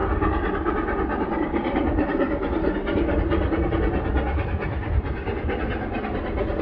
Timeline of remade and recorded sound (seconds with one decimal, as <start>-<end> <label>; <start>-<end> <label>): 0.0-6.6 recorded